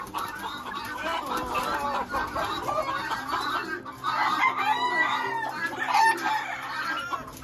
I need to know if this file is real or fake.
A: real